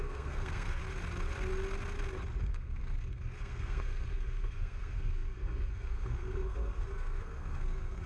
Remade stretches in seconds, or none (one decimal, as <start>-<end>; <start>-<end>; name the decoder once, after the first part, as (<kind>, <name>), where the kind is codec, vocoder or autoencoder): 0.0-0.8 (codec, SNAC); 2.4-8.1